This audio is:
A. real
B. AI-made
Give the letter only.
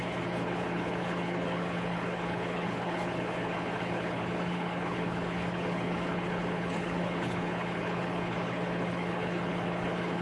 B